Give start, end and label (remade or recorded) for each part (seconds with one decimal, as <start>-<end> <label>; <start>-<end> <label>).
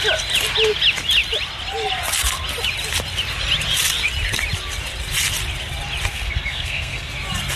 0.0-6.1 recorded; 6.1-7.1 remade; 7.1-7.6 recorded